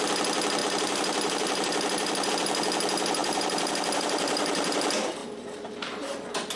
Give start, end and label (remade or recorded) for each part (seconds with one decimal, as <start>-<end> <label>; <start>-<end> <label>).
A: 0.0-0.6 recorded; 0.6-2.3 remade; 2.3-3.2 recorded; 3.2-4.7 remade; 4.7-5.2 recorded; 5.2-6.6 remade